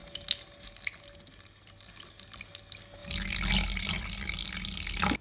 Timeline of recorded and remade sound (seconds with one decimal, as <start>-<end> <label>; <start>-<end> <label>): 0.0-5.2 recorded

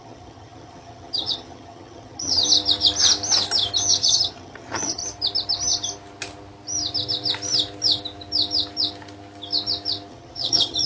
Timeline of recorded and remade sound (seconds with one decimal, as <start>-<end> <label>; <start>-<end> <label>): 0.0-2.4 remade; 2.4-4.0 recorded; 4.0-5.0 remade; 5.0-10.1 recorded; 10.1-10.9 remade

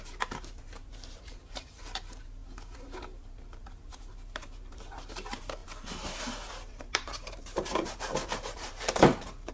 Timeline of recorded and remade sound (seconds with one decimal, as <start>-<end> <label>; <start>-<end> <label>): 0.0-9.5 remade

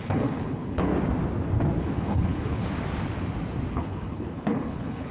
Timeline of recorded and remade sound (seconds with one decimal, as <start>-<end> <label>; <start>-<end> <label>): 0.0-0.9 remade; 0.9-1.8 recorded; 1.8-2.6 remade; 2.6-3.7 recorded; 3.7-5.1 remade

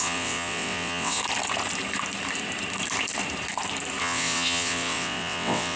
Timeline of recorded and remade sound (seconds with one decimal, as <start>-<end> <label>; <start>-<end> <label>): 0.0-1.2 remade; 1.2-4.0 recorded; 4.0-5.8 remade